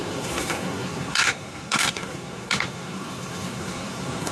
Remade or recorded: remade